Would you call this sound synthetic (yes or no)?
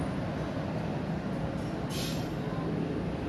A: no